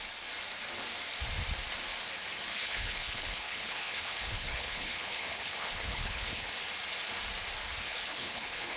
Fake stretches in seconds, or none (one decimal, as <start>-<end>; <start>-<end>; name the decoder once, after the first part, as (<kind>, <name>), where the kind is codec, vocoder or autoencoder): 2.5-6.5 (codec, HILCodec); 7.8-8.8